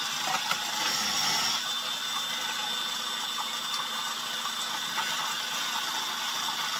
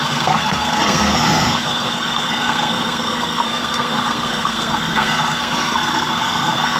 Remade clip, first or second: second